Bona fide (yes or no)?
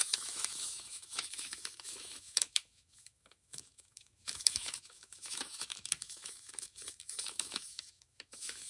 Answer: no